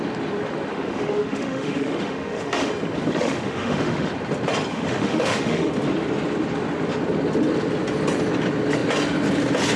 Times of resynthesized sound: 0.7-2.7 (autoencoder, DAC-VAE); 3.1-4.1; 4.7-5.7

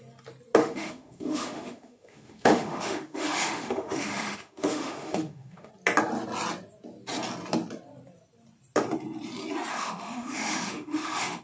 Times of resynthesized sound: 0.6-5.7 (autoencoder, DAC-VAE); 9.7-11.4

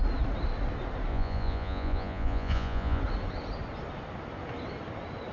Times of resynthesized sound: 1.1-3.0 (vocoder, Vocos)